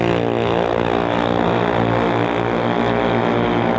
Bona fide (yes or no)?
yes